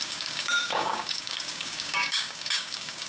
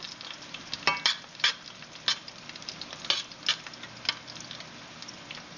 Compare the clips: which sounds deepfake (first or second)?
first